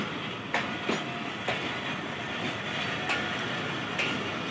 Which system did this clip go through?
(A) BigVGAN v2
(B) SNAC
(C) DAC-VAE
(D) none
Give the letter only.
D